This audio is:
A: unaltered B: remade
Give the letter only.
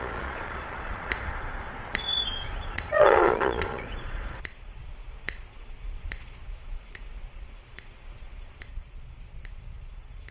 B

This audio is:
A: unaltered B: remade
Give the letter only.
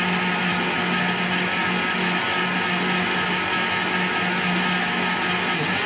A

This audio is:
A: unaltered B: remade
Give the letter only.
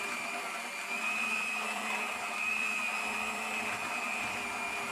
B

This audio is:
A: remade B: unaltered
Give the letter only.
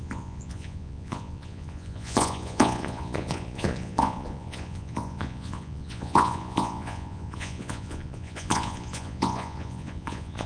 A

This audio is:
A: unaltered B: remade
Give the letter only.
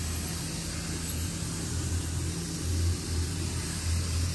A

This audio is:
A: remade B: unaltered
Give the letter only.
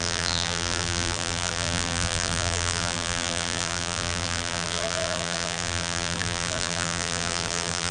A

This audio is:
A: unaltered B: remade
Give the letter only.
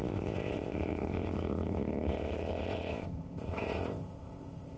B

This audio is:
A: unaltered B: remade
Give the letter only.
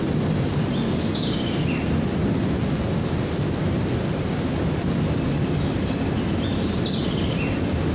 A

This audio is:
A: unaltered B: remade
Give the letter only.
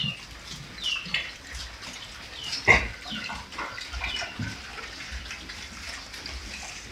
A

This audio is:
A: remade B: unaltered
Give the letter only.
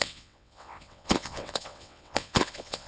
A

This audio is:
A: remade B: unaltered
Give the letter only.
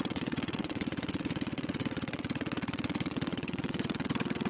A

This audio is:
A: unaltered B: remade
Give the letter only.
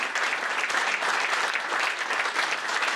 A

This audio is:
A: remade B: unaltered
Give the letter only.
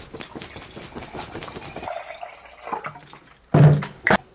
B